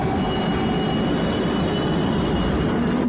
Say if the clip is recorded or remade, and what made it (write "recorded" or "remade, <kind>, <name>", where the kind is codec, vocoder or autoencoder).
recorded